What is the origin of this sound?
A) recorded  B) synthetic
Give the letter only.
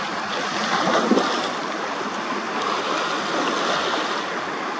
A